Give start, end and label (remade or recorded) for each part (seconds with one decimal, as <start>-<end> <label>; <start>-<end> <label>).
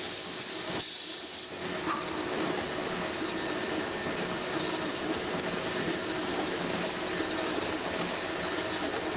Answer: 0.0-9.2 recorded